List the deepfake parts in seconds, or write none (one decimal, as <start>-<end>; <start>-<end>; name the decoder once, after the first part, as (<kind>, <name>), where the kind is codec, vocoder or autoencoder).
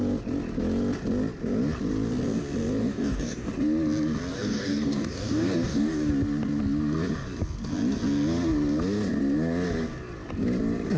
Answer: 2.8-3.5 (codec, DAC); 4.3-6.1